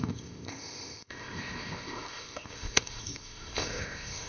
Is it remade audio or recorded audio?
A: remade